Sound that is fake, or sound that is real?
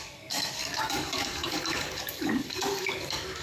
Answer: fake